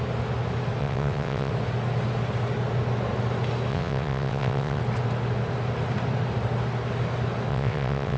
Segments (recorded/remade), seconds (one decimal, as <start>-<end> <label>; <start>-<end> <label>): 0.0-0.8 recorded; 0.8-1.5 remade; 1.5-3.7 recorded; 3.7-4.8 remade; 4.8-7.5 recorded; 7.5-8.2 remade